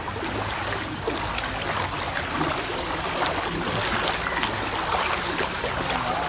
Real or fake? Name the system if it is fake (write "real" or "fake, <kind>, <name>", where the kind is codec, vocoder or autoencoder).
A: real